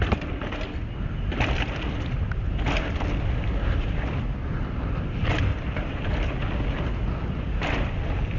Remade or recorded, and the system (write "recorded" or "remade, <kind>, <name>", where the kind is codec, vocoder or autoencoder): recorded